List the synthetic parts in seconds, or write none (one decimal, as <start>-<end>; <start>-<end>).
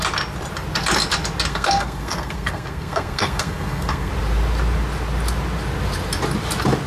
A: 1.5-4.1